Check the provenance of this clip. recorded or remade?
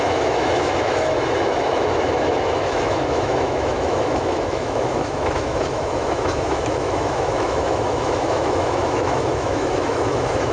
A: remade